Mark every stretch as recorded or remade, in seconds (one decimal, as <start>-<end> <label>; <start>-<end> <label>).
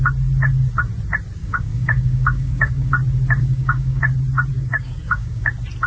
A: 0.0-1.4 recorded; 1.4-2.9 remade; 2.9-3.4 recorded; 3.4-4.0 remade; 4.0-4.5 recorded; 4.5-5.5 remade; 5.5-5.9 recorded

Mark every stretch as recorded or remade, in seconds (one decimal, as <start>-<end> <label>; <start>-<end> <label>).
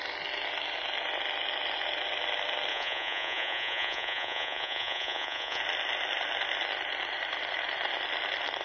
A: 0.0-2.7 recorded; 2.7-5.6 remade; 5.6-8.6 recorded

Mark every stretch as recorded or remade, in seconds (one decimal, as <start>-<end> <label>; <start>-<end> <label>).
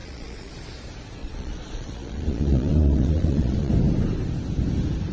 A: 0.0-0.5 remade; 0.5-1.2 recorded; 1.2-3.7 remade; 3.7-5.1 recorded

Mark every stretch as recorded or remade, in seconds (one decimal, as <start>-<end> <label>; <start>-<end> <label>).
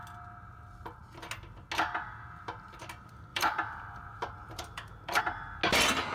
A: 0.0-3.3 recorded; 3.3-5.2 remade; 5.2-6.1 recorded